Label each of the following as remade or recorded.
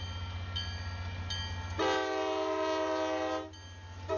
recorded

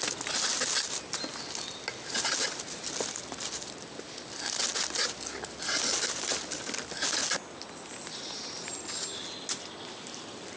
recorded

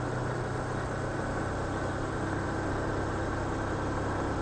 recorded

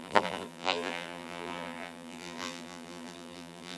remade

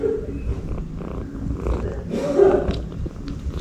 recorded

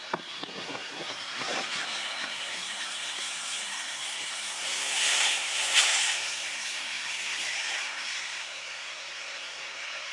remade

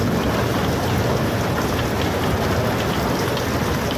recorded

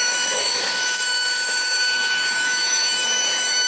remade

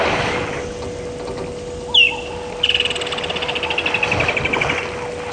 recorded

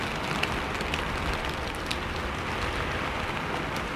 recorded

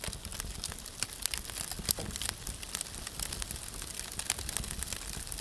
recorded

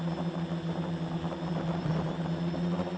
recorded